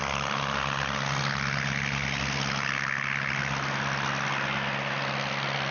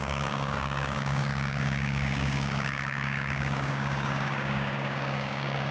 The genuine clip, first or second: first